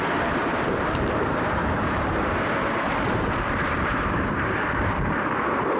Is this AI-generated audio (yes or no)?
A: yes